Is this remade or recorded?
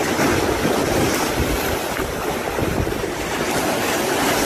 recorded